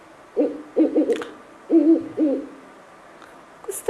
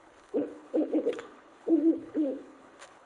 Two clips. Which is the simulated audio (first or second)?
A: second